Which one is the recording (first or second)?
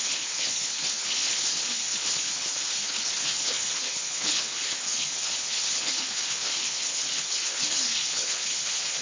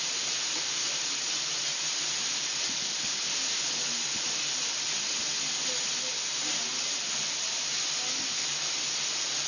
second